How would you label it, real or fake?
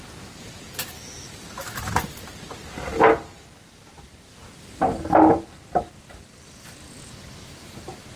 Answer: real